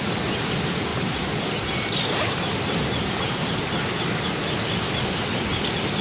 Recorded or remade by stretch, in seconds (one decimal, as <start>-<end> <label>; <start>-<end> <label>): 0.0-6.0 recorded